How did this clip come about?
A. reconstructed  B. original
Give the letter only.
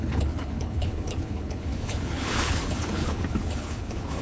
A